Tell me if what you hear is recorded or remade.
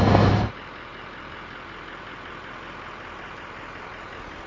recorded